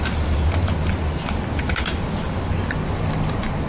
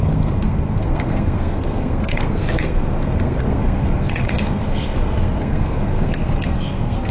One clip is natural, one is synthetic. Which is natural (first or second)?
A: first